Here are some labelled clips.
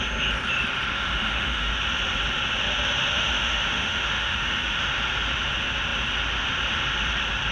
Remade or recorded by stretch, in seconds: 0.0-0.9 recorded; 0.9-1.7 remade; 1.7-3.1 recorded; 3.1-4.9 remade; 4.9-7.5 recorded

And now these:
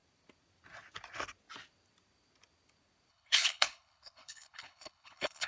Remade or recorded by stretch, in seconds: 0.0-3.1 recorded; 3.1-5.5 remade

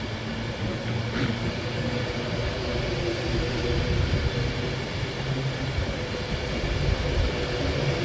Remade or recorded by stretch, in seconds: 0.0-0.7 recorded; 0.7-2.0 remade; 2.0-8.0 recorded

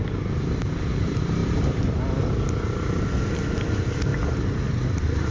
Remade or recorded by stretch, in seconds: 0.0-5.3 recorded